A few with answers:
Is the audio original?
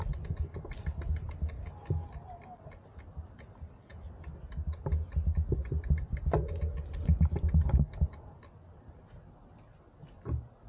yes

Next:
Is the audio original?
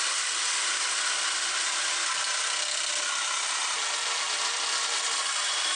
yes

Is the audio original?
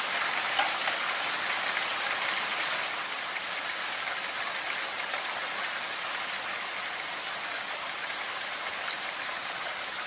yes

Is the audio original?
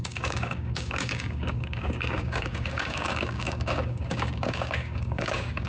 no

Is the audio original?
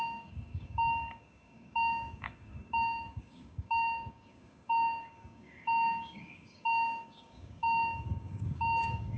no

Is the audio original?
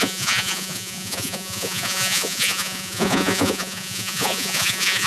no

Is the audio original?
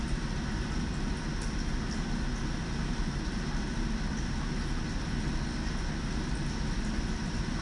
yes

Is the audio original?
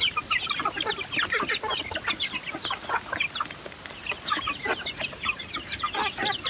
yes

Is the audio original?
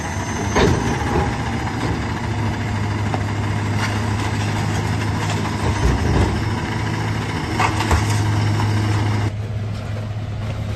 yes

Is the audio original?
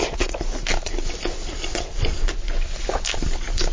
yes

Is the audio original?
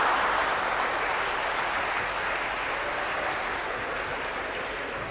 yes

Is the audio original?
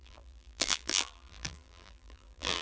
no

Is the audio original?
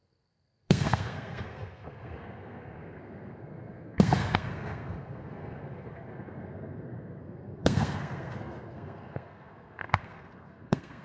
no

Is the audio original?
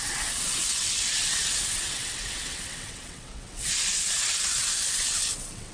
no